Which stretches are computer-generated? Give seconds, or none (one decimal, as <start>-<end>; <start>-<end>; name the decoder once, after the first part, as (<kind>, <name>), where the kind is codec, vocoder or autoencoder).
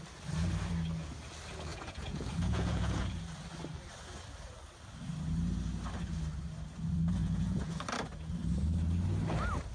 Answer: 1.7-3.2 (vocoder, Vocos); 7.2-7.8